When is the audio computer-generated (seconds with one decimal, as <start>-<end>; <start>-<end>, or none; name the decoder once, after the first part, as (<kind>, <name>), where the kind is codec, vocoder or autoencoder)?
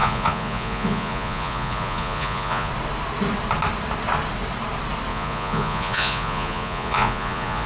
0.0-2.7 (vocoder, Vocos); 5.1-7.7